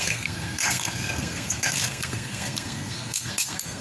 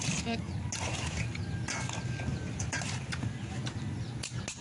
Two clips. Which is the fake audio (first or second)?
first